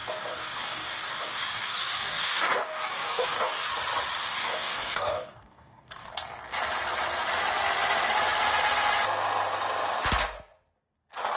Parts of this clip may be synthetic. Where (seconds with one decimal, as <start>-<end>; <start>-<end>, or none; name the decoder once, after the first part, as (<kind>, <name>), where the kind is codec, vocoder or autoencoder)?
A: 0.0-3.7 (codec, DAC); 4.2-6.1